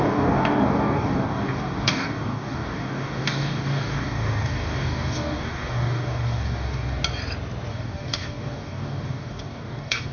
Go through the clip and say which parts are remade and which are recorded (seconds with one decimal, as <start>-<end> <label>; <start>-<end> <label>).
0.0-7.0 remade; 7.0-7.7 recorded; 7.7-10.1 remade